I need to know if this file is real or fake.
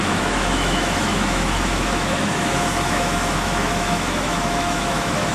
fake